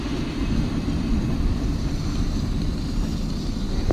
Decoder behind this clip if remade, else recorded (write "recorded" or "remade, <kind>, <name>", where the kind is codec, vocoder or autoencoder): recorded